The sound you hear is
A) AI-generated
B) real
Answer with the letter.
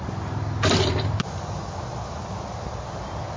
B